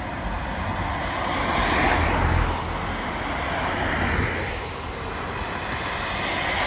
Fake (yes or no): no